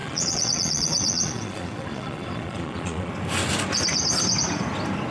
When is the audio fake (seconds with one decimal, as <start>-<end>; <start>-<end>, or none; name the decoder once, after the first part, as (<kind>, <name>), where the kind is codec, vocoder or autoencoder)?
0.0-3.1 (vocoder, Vocos)